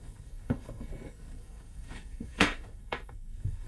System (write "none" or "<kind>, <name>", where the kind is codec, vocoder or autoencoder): codec, SNAC